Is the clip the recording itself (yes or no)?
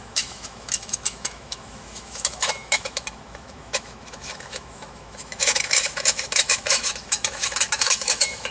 no